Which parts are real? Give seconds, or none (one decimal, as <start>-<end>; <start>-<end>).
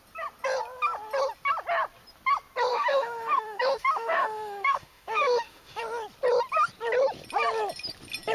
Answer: 0.0-2.7; 5.8-8.3